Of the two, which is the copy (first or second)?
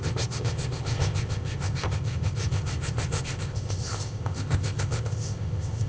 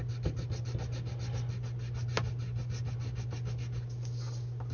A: first